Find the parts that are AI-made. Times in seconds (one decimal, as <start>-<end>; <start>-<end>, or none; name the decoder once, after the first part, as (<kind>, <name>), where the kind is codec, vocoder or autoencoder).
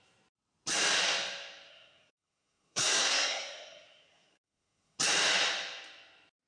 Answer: 1.7-5.0 (codec, SNAC)